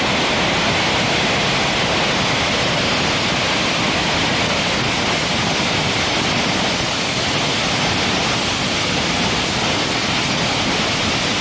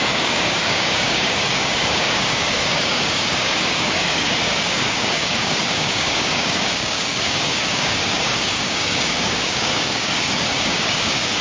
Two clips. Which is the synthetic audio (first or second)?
second